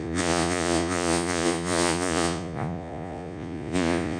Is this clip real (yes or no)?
no